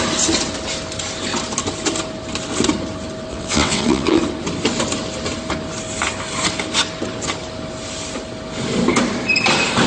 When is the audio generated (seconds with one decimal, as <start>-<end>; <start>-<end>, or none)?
3.3-4.2

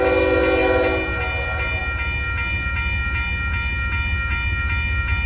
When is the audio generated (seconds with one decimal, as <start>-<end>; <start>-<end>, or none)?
none

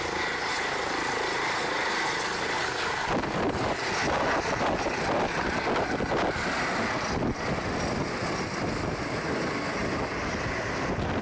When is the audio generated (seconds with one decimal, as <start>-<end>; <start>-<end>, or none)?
none

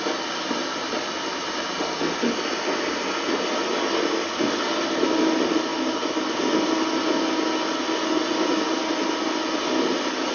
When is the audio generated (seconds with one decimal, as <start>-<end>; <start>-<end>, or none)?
none

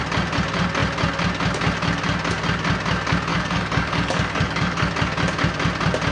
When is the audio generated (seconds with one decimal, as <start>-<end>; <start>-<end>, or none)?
3.3-4.9